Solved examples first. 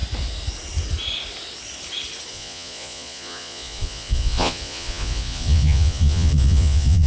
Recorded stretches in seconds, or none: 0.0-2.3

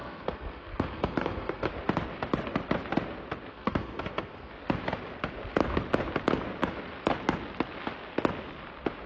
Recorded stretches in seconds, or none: 1.7-3.5; 4.5-9.1